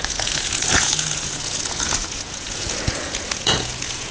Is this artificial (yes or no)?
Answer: yes